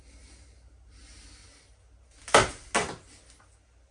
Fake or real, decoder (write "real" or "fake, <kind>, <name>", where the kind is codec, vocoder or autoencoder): real